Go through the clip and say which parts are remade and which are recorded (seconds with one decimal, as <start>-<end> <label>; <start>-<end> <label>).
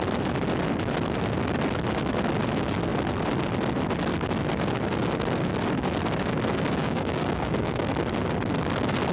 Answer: 0.0-6.8 recorded; 6.8-7.9 remade; 7.9-9.1 recorded